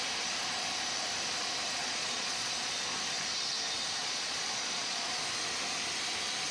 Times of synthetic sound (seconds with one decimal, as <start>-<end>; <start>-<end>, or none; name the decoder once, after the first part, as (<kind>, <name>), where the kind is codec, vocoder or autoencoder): 1.8-2.7 (vocoder, Vocos); 4.0-5.2